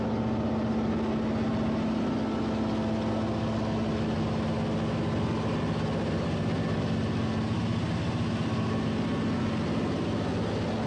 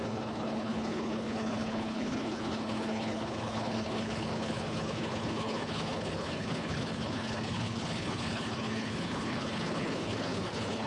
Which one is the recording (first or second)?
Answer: first